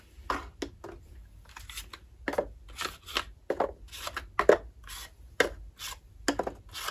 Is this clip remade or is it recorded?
recorded